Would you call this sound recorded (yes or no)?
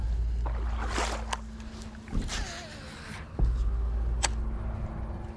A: yes